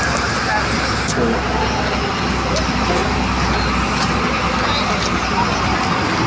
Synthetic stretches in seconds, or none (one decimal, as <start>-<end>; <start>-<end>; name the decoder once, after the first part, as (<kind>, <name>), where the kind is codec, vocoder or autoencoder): none